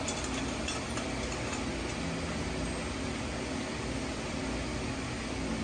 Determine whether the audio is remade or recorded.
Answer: recorded